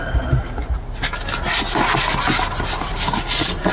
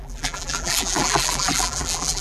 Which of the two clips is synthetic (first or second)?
second